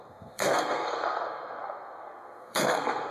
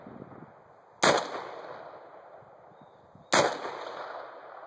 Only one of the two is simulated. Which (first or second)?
first